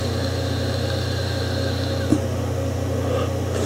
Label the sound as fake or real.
real